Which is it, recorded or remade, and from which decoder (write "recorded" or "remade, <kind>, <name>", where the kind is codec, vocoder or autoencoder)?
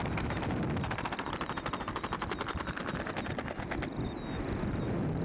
recorded